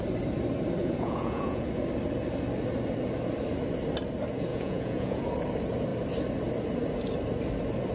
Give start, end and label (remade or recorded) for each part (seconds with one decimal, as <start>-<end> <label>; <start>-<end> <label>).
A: 0.0-0.8 recorded; 0.8-1.7 remade; 1.7-4.5 recorded; 4.5-5.2 remade; 5.2-7.9 recorded